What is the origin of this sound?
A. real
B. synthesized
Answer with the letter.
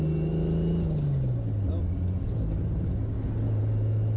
A